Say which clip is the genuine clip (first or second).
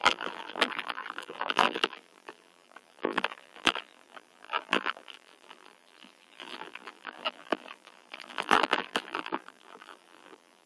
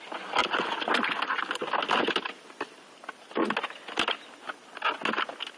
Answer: second